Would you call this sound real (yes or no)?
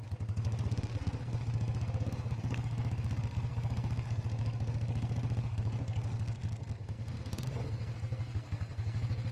no